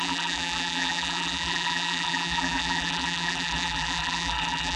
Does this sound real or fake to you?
fake